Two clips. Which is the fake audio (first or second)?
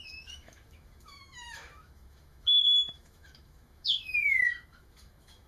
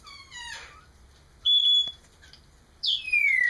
first